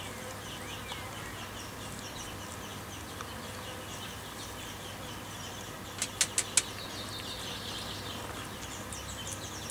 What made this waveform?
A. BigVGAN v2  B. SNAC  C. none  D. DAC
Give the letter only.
C